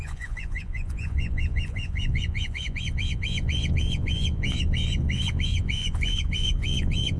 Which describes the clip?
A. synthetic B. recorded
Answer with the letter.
A